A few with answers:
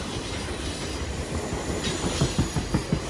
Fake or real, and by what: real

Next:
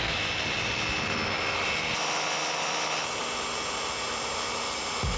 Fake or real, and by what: real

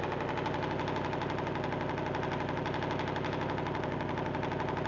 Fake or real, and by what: real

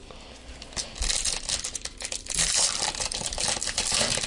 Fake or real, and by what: real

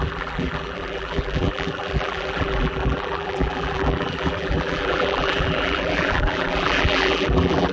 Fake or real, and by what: fake, vocoder, BigVGAN v2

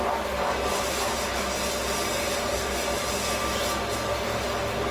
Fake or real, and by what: real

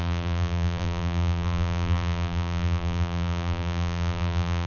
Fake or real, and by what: fake, vocoder, BigVGAN v2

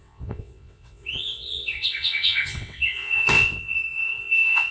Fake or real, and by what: fake, vocoder, WaveNeXt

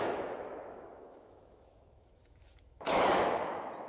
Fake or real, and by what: fake, autoencoder, DAC-VAE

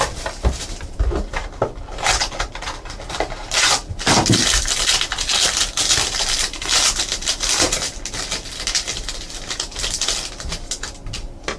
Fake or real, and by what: real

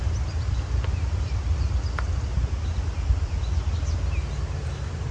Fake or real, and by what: real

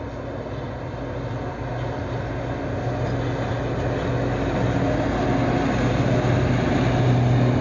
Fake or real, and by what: real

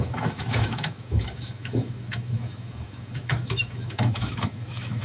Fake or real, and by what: fake, autoencoder, DAC-VAE